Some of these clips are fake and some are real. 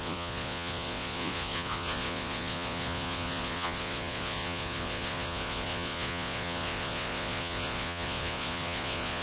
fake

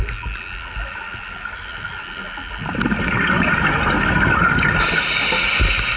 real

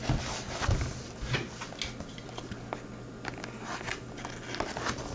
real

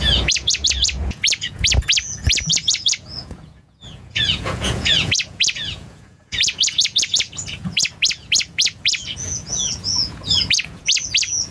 fake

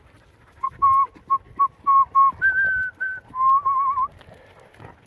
real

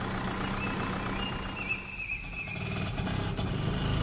real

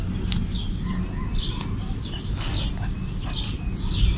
real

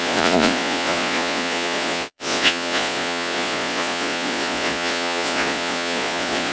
fake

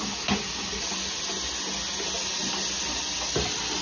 real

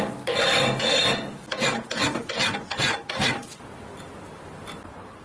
real